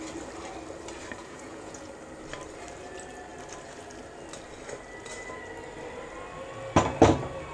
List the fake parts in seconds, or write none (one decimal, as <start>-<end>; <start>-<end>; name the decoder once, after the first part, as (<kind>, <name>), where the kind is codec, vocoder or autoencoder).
1.2-1.9 (vocoder, Vocos)